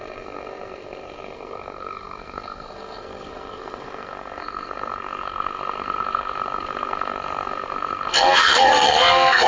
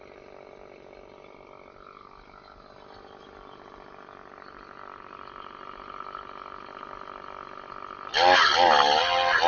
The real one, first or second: second